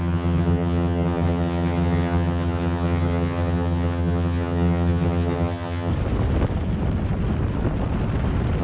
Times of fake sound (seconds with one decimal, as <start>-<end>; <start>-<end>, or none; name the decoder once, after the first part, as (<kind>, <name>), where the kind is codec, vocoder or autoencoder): 0.0-5.9 (vocoder, HiFi-GAN)